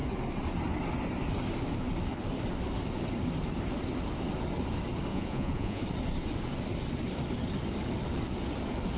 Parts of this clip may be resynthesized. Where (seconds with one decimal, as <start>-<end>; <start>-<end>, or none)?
5.1-5.8